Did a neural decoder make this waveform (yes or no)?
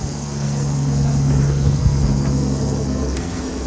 yes